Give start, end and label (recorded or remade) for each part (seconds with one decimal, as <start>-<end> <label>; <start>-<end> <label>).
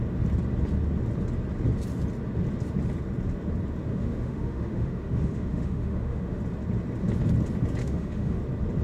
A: 0.0-3.9 recorded; 3.9-6.4 remade; 6.4-7.8 recorded; 7.8-8.4 remade; 8.4-8.8 recorded